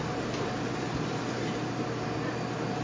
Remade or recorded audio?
recorded